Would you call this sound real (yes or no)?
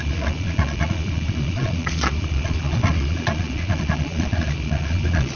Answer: no